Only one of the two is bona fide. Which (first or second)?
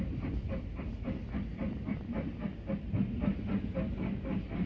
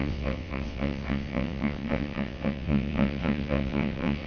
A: first